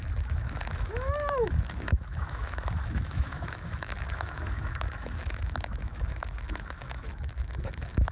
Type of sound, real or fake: fake